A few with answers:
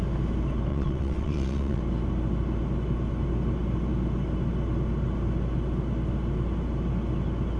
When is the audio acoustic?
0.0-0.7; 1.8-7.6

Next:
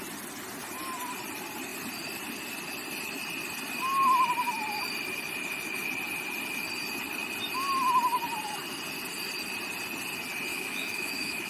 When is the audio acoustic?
0.0-10.5

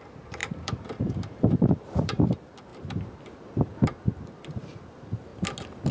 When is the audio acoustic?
5.3-5.9

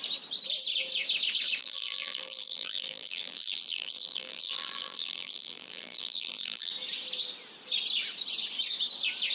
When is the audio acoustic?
0.0-1.6; 6.7-9.3

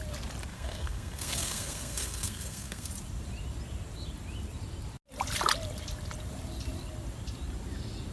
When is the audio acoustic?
0.0-0.5; 2.9-8.1

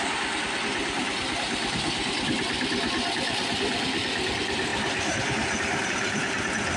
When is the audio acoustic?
0.0-6.8